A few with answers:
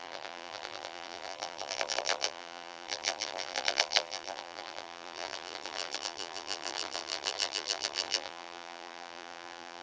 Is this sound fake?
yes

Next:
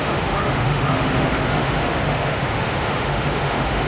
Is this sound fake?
yes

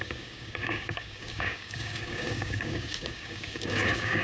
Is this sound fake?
yes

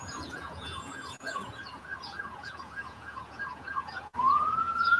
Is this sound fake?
yes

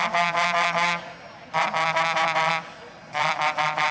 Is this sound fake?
yes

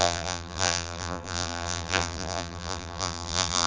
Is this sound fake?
yes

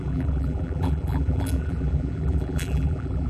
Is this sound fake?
yes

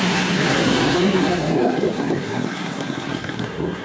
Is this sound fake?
yes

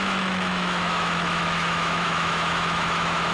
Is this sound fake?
yes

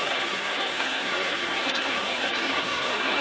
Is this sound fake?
yes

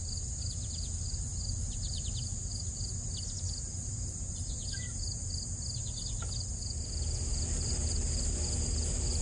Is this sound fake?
no